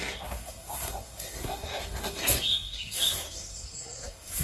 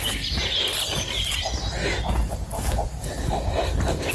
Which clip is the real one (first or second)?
second